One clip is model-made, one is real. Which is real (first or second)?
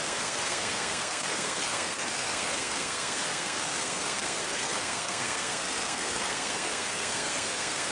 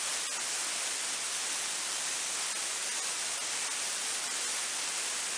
second